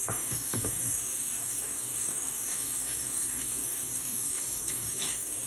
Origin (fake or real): fake